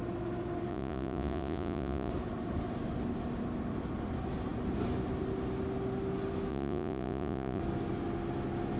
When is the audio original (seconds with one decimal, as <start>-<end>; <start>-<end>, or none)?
0.0-0.7; 2.1-6.5; 7.6-8.8